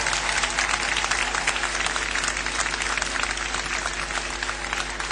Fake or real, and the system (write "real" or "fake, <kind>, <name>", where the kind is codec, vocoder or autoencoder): real